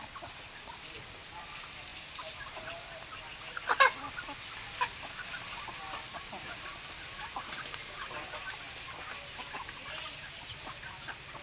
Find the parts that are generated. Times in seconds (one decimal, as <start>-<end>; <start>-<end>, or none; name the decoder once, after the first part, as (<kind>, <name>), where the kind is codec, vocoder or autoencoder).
none